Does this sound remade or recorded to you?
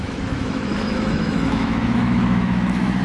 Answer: remade